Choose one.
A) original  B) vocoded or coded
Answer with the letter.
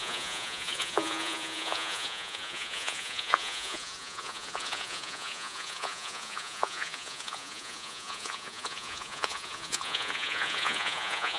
B